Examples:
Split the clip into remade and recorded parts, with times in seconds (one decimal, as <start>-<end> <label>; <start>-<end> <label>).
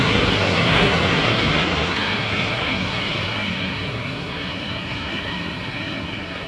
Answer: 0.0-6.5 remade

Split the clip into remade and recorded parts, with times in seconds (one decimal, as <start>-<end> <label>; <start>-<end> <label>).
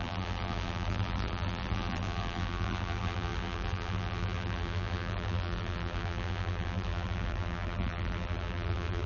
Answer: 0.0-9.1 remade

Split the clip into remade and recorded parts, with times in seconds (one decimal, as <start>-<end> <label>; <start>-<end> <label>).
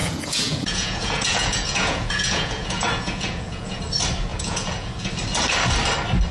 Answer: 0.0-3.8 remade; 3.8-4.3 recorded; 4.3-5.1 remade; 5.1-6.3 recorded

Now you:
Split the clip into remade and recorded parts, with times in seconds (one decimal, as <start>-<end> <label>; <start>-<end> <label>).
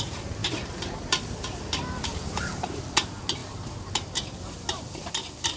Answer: 0.0-0.4 recorded; 0.4-2.5 remade; 2.5-3.4 recorded; 3.4-5.1 remade; 5.1-5.6 recorded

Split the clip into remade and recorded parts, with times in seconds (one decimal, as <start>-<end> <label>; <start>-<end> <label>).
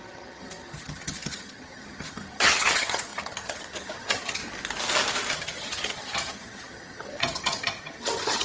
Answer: 0.0-4.4 remade; 4.4-5.3 recorded; 5.3-8.4 remade